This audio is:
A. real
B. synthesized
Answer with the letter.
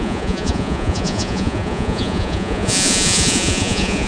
B